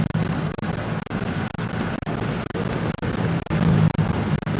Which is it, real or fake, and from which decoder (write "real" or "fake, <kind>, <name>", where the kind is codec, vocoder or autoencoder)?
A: real